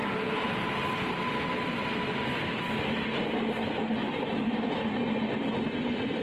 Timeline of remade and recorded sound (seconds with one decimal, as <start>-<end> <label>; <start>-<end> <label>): 0.0-6.2 recorded